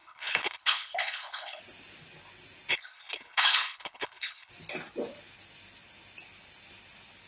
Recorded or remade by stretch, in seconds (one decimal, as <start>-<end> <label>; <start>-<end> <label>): 0.0-1.6 remade; 1.6-2.7 recorded; 2.7-4.5 remade; 4.5-7.3 recorded